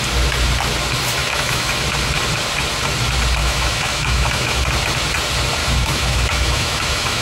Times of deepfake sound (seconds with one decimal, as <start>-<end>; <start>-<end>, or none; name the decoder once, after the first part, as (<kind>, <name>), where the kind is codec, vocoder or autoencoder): 1.2-1.7 (autoencoder, DAC-VAE); 3.4-4.6; 5.6-7.2